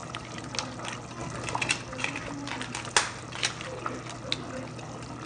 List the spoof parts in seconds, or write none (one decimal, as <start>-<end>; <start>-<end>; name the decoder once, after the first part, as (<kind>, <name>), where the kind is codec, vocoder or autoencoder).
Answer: 0.0-0.5 (vocoder, BigVGAN v2)